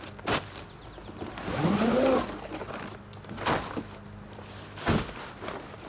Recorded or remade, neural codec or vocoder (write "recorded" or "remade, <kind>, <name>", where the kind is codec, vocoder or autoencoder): recorded